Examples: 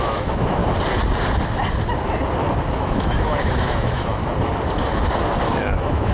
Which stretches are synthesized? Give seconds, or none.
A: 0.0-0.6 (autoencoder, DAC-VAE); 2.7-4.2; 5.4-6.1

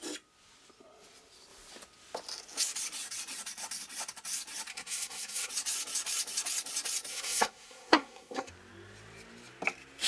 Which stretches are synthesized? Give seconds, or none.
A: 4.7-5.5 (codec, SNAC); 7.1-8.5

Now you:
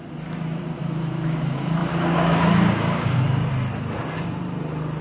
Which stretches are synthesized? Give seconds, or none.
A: 1.8-3.5 (codec, DAC)

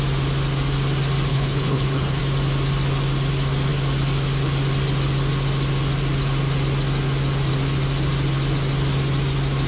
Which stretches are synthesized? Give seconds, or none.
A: 1.3-2.2 (codec, HILCodec)

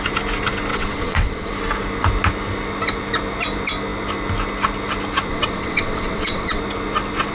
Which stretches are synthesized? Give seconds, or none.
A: 0.7-1.5 (vocoder, WaveNeXt); 5.3-6.6

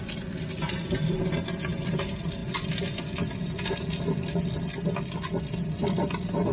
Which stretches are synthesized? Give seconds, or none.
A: none

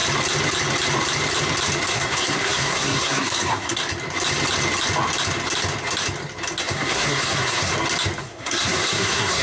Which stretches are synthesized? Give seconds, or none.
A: 1.9-3.8 (codec, SNAC); 6.6-7.7; 8.2-9.4

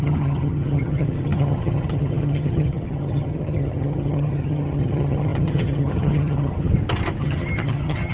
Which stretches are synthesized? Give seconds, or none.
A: 0.0-6.7 (vocoder, HiFi-GAN); 7.2-8.1